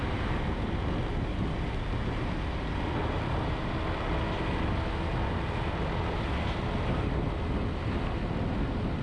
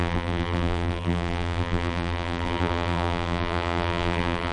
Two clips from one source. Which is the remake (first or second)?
second